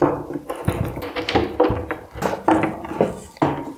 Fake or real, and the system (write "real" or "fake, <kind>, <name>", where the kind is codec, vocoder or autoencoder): real